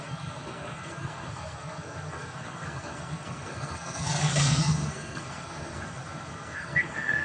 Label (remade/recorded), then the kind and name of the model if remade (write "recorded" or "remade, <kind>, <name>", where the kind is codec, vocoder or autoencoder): remade, codec, SNAC